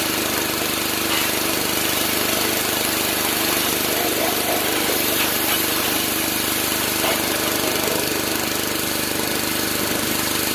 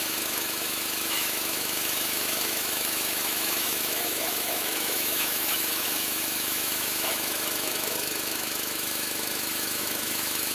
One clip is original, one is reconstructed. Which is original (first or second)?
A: first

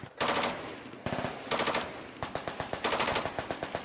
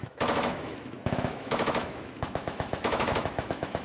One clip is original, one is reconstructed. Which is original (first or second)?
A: first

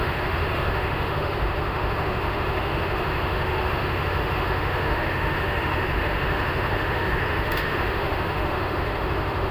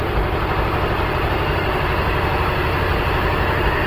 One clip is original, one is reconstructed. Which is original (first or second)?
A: second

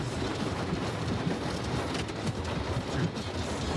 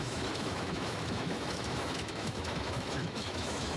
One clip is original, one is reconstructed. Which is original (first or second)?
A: first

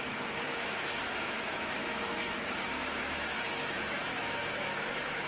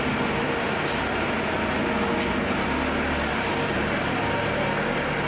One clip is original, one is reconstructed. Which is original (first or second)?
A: second